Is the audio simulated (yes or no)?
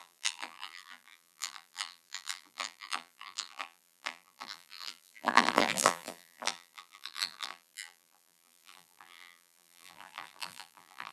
yes